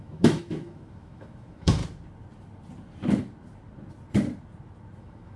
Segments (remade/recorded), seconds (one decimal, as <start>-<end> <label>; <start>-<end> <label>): 0.0-1.8 remade; 1.8-5.0 recorded; 5.0-5.4 remade